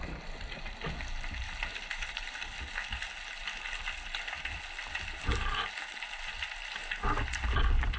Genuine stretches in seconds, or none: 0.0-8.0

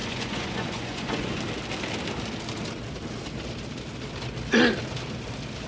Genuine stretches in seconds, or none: 1.4-5.7

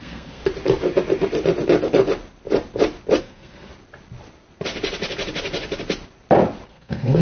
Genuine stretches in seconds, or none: 0.4-3.2; 3.7-6.7

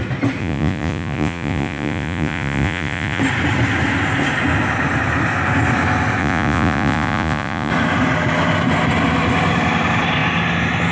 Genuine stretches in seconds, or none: 0.0-0.4; 3.2-6.2; 7.7-10.9